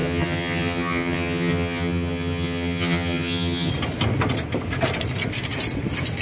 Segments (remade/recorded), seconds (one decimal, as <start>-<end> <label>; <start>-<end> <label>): 0.0-3.7 remade; 3.7-6.2 recorded